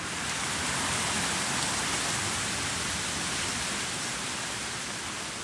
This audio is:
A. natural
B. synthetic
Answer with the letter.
A